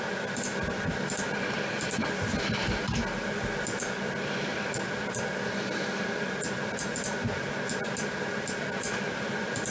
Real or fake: real